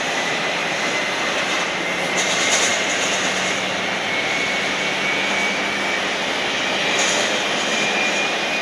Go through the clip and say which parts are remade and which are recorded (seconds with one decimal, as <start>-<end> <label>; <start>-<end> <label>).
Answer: 0.0-0.6 remade; 0.6-2.1 recorded; 2.1-2.7 remade; 2.7-6.8 recorded; 6.8-8.6 remade